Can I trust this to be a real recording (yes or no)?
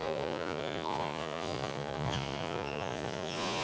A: no